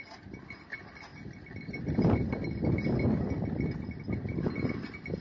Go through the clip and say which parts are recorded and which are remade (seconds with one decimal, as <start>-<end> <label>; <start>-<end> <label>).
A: 0.0-5.2 recorded